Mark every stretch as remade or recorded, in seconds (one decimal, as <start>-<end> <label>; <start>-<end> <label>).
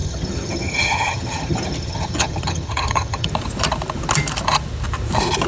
0.0-3.3 remade; 3.3-5.5 recorded